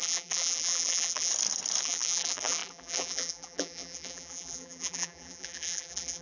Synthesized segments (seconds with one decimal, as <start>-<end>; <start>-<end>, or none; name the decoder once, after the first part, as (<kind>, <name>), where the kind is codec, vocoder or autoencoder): 0.0-1.3 (vocoder, BigVGAN v2); 1.8-6.2